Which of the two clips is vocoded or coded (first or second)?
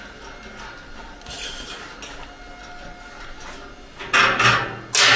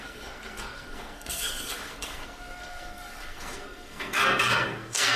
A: second